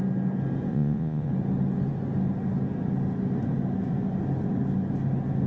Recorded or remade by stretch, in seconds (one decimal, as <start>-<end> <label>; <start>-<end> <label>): 0.0-0.7 recorded; 0.7-1.3 remade; 1.3-5.5 recorded